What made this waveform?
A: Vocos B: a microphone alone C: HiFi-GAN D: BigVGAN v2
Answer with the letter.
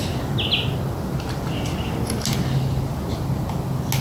B